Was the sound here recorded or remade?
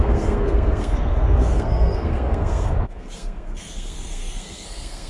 remade